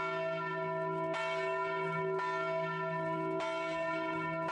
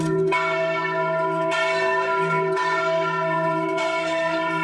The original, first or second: first